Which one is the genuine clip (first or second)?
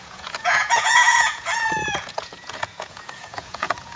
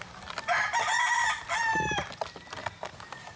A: second